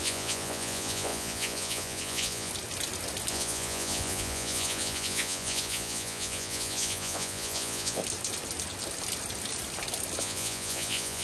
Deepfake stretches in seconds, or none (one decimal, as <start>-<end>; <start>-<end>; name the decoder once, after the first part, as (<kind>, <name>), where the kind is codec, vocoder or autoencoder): 0.0-2.5 (vocoder, Vocos); 3.3-8.0; 10.2-11.2